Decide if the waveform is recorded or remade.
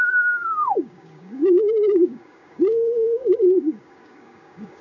remade